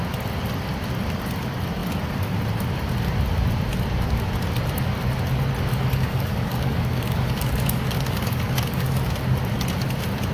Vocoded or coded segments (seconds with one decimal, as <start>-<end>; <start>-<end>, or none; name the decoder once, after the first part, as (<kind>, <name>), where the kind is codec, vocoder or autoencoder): 5.7-9.1 (codec, DAC)